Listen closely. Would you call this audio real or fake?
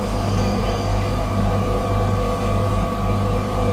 fake